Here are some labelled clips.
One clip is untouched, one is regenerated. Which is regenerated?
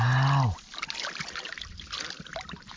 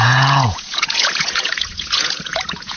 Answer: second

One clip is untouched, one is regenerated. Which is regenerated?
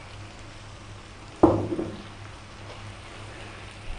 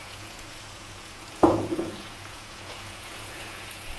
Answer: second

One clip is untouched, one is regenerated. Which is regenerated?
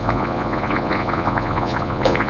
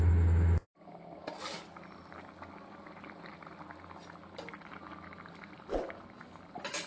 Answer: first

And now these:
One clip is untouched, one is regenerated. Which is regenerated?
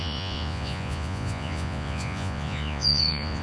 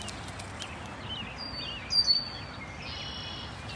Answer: first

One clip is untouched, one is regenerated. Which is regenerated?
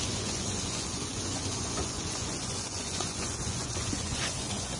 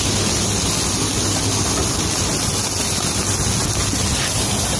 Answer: first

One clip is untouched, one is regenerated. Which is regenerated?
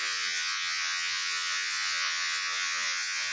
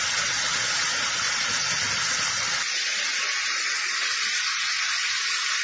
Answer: first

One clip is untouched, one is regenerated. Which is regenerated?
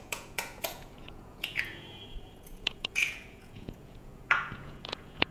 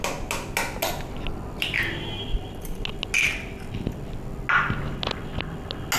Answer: first